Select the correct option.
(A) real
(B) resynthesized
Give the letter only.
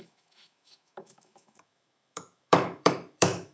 B